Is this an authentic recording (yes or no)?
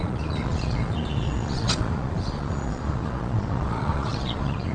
no